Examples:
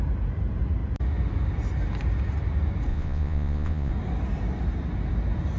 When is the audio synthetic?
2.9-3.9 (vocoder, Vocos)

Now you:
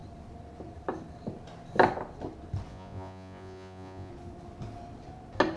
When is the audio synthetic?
2.7-4.1 (vocoder, Vocos)

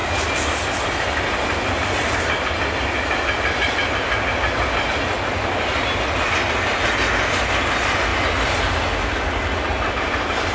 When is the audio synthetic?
none

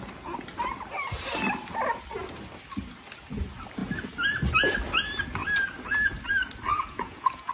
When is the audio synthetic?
6.7-7.5 (vocoder, Vocos)

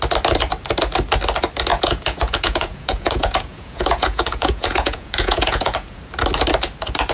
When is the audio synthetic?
1.7-6.0 (vocoder, Vocos)